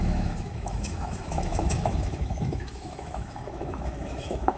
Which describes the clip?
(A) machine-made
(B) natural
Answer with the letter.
A